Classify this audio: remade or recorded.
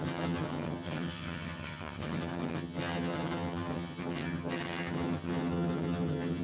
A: remade